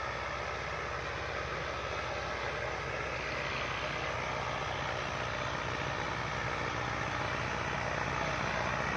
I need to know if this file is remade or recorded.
recorded